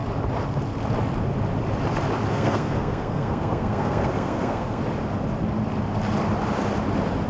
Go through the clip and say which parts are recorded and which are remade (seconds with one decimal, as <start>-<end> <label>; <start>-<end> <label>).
0.0-2.3 recorded; 2.3-4.8 remade; 4.8-7.3 recorded